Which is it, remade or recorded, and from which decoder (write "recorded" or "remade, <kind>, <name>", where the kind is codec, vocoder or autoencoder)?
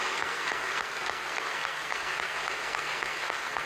remade, codec, SNAC